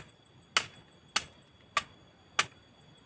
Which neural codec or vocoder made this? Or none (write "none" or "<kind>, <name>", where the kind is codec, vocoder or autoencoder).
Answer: none